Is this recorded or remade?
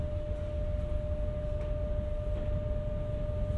recorded